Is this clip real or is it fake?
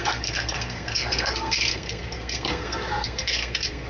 fake